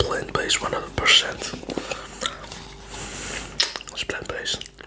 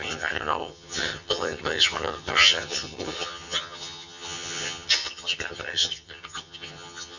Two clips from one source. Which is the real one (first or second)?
first